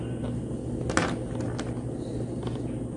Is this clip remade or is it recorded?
recorded